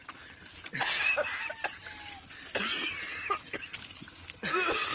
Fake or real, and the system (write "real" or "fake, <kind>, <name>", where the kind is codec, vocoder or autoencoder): real